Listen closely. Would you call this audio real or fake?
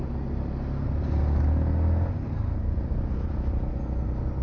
real